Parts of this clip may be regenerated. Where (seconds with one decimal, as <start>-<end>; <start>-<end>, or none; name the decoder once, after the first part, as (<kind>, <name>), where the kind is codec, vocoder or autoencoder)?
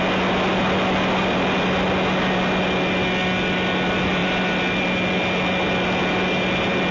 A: none